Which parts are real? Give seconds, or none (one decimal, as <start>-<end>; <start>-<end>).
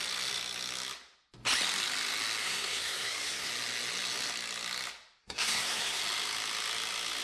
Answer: 0.0-2.4; 3.5-5.2; 6.0-7.2